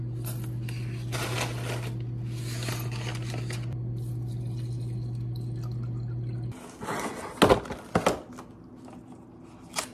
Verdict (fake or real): real